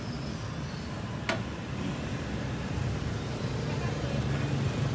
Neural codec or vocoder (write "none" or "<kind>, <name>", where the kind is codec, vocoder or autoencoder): none